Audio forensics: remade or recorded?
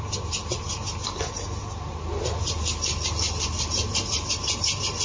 recorded